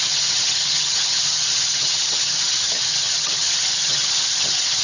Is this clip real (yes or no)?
no